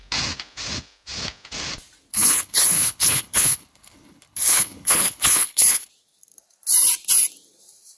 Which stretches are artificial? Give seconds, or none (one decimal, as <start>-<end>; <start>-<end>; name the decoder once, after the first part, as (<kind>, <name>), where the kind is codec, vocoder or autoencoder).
2.1-5.9 (codec, HILCodec)